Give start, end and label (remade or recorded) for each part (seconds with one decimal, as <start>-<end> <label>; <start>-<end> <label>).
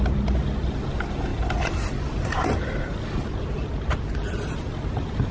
0.0-5.3 recorded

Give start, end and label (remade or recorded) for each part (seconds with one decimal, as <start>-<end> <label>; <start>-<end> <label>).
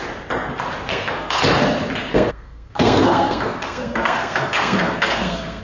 0.0-0.9 recorded; 0.9-1.4 remade; 1.4-2.1 recorded; 2.1-5.6 remade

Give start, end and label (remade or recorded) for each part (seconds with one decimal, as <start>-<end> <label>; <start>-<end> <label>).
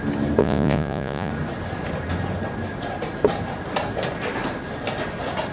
0.0-0.4 recorded; 0.4-1.3 remade; 1.3-5.5 recorded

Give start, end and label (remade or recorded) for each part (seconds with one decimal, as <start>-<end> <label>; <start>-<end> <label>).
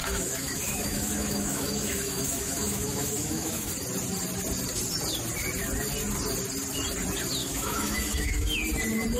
0.0-3.7 remade; 3.7-7.4 recorded; 7.4-8.6 remade; 8.6-9.2 recorded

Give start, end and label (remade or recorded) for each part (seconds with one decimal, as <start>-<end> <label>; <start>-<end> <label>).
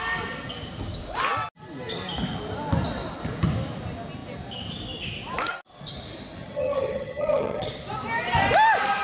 0.0-6.4 recorded; 6.4-7.7 remade; 7.7-9.0 recorded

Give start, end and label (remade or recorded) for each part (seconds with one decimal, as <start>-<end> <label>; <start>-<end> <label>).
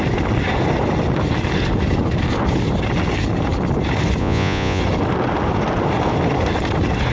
0.0-4.2 recorded; 4.2-4.8 remade; 4.8-7.1 recorded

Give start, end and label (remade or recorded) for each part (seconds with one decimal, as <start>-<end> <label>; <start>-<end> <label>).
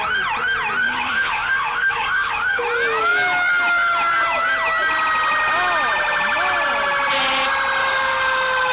0.0-0.8 recorded; 0.8-2.6 remade; 2.6-7.8 recorded; 7.8-8.7 remade